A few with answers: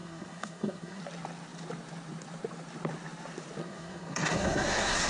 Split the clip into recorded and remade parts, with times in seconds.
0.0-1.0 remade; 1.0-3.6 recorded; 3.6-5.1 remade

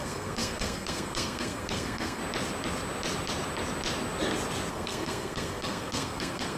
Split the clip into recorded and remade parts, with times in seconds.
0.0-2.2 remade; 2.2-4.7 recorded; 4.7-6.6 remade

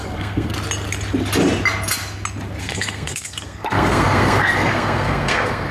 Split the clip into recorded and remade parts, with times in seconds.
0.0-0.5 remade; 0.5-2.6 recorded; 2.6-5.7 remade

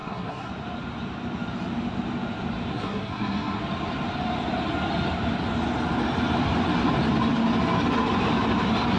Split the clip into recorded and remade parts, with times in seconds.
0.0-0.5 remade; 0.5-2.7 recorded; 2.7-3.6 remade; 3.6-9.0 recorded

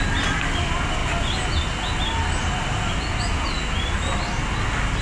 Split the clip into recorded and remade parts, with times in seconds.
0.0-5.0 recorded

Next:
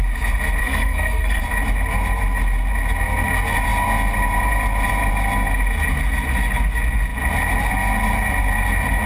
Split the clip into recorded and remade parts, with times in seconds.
0.0-0.6 recorded; 0.6-1.4 remade; 1.4-9.1 recorded

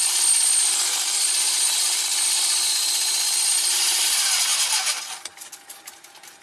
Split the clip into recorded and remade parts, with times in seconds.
0.0-6.4 recorded